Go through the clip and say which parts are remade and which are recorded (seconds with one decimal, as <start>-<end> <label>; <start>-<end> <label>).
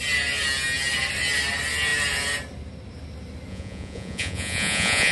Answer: 0.0-3.5 recorded; 3.5-5.1 remade